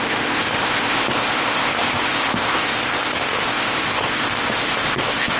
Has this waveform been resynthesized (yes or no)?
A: yes